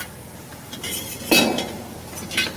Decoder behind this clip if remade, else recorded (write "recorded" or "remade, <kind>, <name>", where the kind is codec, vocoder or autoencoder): recorded